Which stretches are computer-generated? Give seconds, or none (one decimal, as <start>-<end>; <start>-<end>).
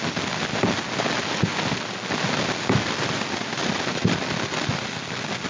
none